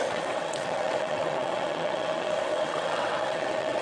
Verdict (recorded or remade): remade